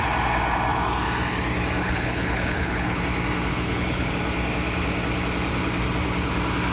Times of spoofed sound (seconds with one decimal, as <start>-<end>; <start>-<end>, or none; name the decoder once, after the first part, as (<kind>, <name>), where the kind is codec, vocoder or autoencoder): 1.8-3.0 (codec, HILCodec); 3.5-4.1